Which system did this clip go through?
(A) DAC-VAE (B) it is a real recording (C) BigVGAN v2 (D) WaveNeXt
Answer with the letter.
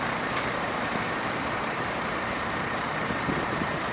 C